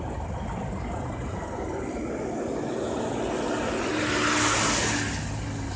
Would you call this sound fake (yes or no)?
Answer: no